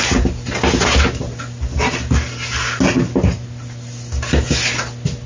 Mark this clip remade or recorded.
recorded